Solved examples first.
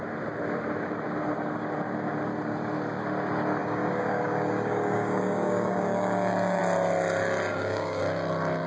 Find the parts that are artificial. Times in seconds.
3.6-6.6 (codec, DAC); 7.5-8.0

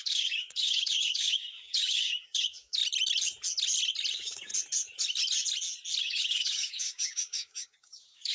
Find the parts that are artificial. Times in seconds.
0.0-2.8 (codec, DAC); 4.1-4.5; 6.0-8.3